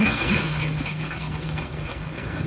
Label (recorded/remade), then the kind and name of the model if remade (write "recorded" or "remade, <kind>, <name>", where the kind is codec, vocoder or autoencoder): remade, codec, SNAC